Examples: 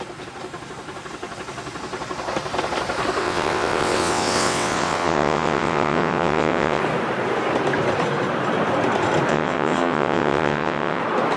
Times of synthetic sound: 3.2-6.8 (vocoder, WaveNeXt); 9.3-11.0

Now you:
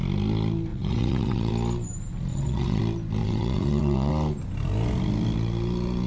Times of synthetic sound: 0.7-1.5 (vocoder, WaveNeXt); 2.3-2.8; 3.2-4.1

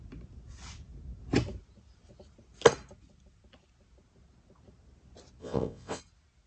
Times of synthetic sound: 5.4-6.0 (vocoder, WaveNeXt)

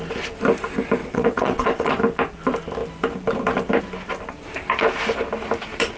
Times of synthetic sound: 1.0-1.9 (vocoder, WaveNeXt)

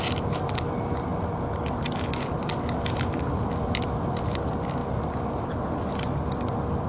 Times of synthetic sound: none